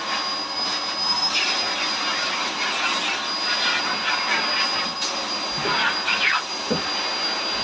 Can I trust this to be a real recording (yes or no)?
yes